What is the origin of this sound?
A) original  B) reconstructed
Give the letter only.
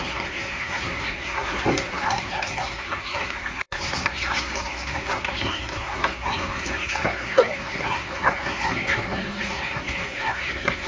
B